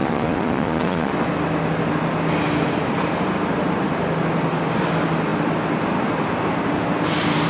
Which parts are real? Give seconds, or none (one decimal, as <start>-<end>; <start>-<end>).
1.1-7.5